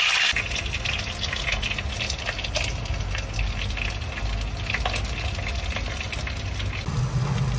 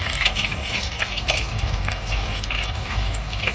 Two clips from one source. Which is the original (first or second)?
first